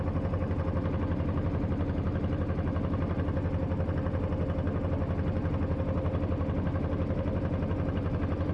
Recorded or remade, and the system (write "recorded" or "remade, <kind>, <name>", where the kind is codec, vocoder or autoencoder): recorded